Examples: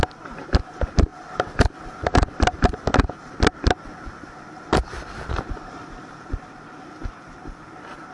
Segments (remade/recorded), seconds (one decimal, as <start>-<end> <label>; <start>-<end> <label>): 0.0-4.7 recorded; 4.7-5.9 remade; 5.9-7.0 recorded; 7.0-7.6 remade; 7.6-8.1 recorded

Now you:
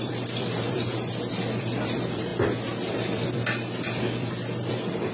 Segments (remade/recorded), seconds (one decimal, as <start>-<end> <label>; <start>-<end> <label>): 0.0-2.3 remade; 2.3-2.9 recorded; 2.9-5.1 remade

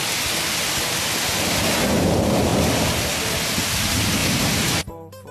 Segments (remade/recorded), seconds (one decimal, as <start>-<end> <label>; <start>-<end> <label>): 0.0-5.3 recorded

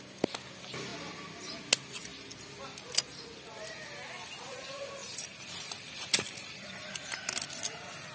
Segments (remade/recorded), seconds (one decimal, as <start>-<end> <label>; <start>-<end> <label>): 0.0-5.0 recorded; 5.0-7.3 remade; 7.3-8.1 recorded

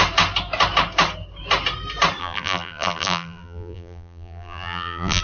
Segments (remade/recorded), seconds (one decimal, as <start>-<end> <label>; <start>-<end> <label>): 0.0-2.2 recorded; 2.2-5.2 remade

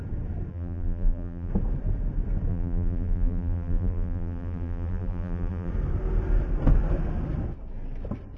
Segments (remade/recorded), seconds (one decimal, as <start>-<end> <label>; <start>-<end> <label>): 0.0-0.5 recorded; 0.5-1.5 remade; 1.5-2.5 recorded; 2.5-5.7 remade; 5.7-8.4 recorded